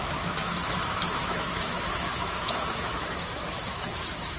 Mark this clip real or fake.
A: fake